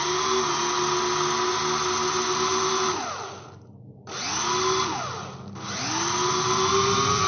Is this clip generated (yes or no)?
no